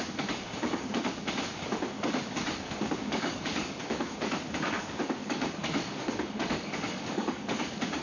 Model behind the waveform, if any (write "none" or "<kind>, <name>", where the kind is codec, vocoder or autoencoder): codec, DAC